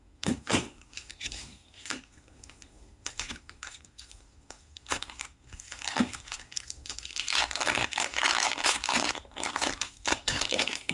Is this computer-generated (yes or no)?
yes